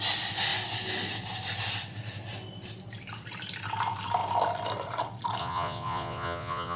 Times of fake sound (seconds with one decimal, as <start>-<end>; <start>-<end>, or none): 5.4-6.8